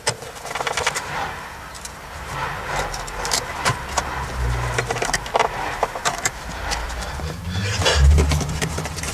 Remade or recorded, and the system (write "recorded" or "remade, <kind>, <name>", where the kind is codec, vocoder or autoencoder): remade, vocoder, BigVGAN v2